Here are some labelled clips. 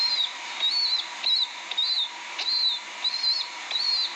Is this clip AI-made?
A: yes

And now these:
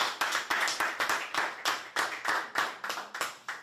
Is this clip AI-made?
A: no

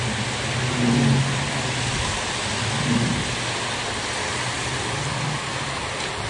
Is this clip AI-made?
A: no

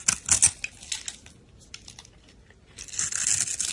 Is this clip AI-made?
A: no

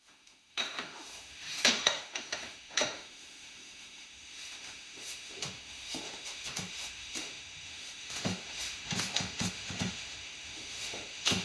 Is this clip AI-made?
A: yes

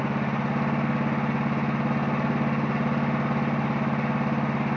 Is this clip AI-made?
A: no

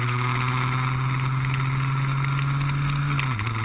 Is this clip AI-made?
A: no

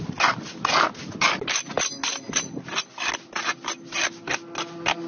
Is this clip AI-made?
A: no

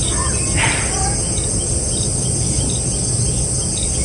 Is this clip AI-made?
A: no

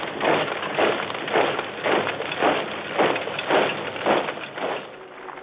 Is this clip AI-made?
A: no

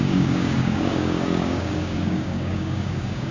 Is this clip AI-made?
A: yes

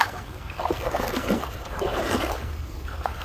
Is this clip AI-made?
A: yes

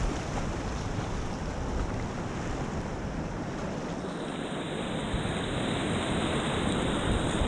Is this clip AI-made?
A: no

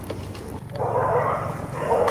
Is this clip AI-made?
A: no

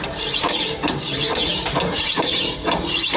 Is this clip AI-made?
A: yes